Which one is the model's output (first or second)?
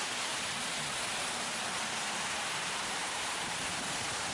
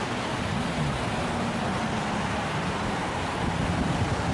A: first